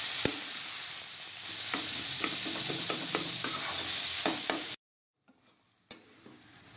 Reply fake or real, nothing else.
real